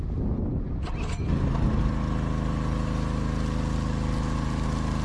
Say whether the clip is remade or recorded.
recorded